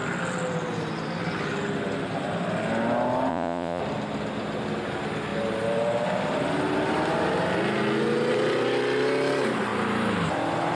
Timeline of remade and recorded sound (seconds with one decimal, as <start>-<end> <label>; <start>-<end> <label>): 0.0-3.3 recorded; 3.3-3.8 remade; 3.8-10.7 recorded